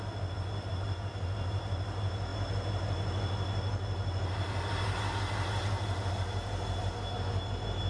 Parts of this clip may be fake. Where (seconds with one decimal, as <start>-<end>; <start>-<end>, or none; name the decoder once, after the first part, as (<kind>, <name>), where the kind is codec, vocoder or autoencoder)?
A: none